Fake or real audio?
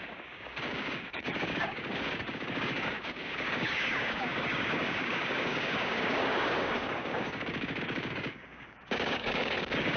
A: fake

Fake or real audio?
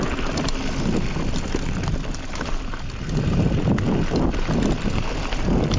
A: real